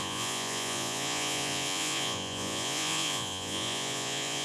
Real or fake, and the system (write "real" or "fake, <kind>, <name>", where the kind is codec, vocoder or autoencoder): fake, vocoder, Vocos